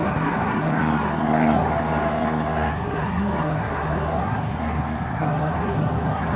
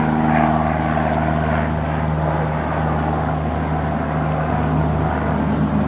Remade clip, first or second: first